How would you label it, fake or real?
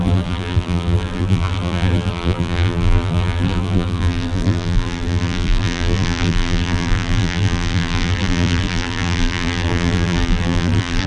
fake